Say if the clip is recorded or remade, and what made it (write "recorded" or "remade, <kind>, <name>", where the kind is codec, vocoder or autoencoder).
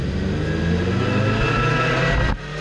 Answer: recorded